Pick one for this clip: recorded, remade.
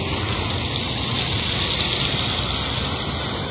recorded